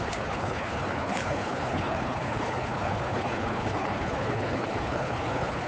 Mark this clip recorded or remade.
remade